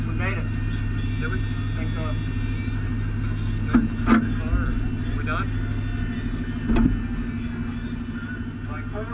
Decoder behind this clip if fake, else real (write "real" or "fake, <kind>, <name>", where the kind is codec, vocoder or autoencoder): real